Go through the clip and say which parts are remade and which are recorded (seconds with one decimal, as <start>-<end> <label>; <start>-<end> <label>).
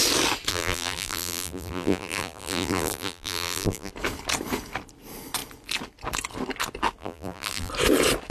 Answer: 0.0-0.5 recorded; 0.5-3.9 remade; 3.9-7.0 recorded; 7.0-7.7 remade; 7.7-8.3 recorded